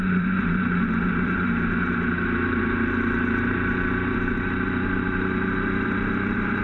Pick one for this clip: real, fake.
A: fake